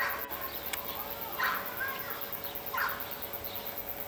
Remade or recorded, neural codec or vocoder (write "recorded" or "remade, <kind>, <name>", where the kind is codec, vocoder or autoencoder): recorded